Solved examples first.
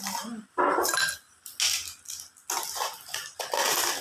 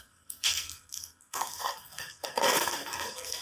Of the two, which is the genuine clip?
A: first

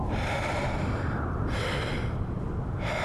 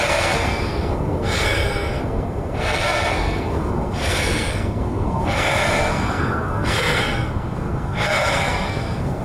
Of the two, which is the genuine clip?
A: first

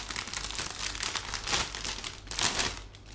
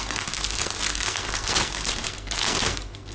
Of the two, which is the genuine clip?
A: first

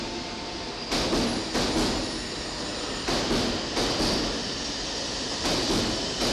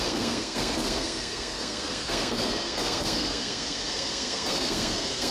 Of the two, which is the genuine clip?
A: first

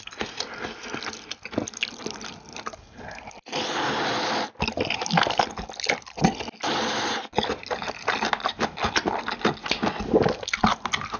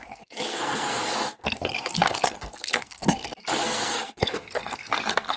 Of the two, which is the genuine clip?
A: first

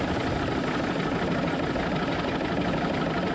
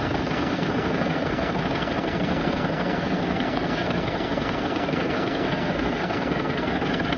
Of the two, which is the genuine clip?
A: first